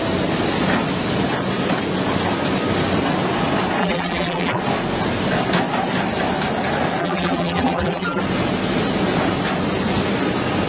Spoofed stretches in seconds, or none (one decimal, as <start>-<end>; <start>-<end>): 3.8-4.6; 7.0-8.2